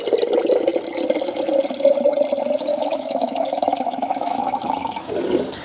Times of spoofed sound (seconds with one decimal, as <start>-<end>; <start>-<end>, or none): 2.7-5.1